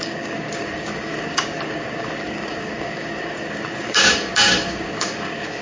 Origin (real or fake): fake